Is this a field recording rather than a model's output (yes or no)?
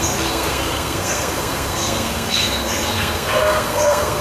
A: no